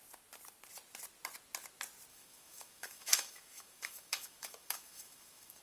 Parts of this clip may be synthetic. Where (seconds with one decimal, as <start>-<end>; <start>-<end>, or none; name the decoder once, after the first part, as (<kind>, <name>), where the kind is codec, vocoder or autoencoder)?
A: 2.1-5.6 (autoencoder, DAC-VAE)